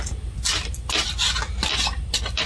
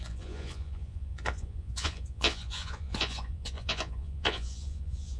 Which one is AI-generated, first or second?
second